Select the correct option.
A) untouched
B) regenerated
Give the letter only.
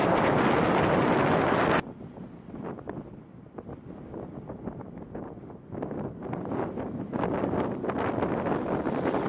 A